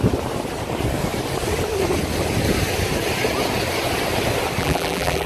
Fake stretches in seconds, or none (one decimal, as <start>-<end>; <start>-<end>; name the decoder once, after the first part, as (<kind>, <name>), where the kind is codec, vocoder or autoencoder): 4.6-5.3 (vocoder, BigVGAN v2)